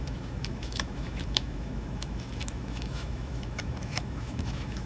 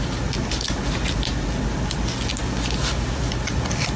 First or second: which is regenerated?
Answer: first